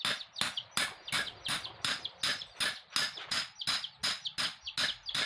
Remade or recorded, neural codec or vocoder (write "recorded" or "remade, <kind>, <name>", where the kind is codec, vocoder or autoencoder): recorded